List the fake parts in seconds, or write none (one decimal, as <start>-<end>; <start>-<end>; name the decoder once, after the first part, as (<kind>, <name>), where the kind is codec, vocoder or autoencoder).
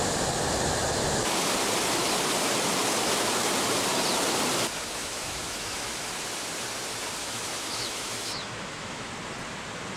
5.0-6.1 (autoencoder, DAC-VAE); 7.2-9.1